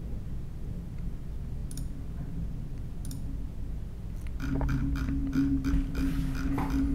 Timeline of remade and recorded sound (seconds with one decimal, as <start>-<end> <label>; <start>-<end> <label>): 0.0-6.9 recorded